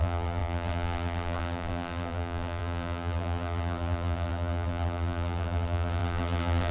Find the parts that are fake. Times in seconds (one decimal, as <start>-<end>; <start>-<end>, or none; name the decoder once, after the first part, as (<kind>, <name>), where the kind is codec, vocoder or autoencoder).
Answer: 0.0-6.7 (vocoder, BigVGAN v2)